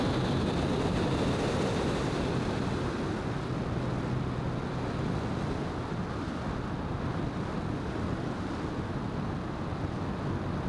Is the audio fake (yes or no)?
no